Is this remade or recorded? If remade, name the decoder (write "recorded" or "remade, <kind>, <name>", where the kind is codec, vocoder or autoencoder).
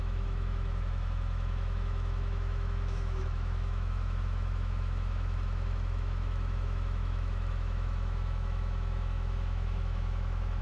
remade, autoencoder, DAC-VAE